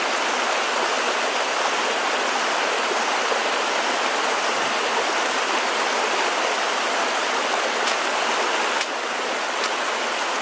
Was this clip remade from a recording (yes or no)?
no